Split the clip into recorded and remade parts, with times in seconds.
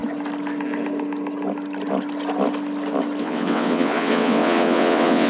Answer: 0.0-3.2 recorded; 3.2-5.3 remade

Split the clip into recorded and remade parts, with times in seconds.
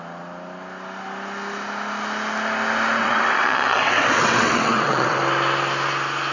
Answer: 0.0-3.0 recorded; 3.0-5.2 remade; 5.2-6.3 recorded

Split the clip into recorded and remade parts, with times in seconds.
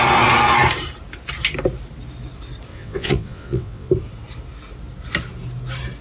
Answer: 0.0-2.7 recorded; 2.7-3.9 remade; 3.9-6.0 recorded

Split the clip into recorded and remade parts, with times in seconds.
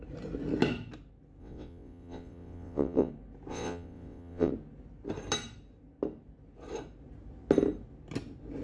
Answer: 0.0-1.4 recorded; 1.4-3.1 remade; 3.1-3.5 recorded; 3.5-4.5 remade; 4.5-8.6 recorded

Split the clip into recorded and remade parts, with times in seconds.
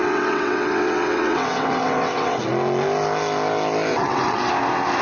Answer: 0.0-2.4 remade; 2.4-3.9 recorded; 3.9-4.5 remade; 4.5-5.0 recorded